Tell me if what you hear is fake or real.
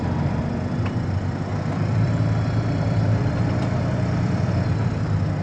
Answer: fake